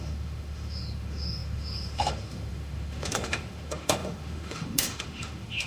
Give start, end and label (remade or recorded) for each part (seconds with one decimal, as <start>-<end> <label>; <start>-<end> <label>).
0.0-5.7 remade